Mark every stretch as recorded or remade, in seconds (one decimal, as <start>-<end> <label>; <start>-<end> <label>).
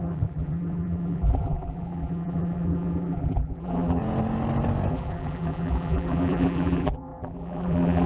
0.0-4.0 remade; 4.0-4.9 recorded; 4.9-8.1 remade